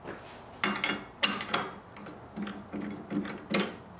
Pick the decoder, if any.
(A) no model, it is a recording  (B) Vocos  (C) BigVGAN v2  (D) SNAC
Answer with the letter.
A